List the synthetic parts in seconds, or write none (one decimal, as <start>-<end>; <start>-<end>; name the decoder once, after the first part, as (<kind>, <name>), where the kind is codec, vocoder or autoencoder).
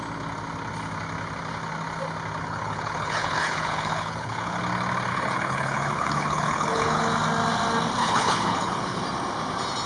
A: 2.4-4.6 (codec, HILCodec); 5.1-7.0; 8.0-9.0